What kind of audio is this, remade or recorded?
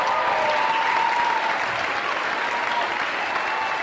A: recorded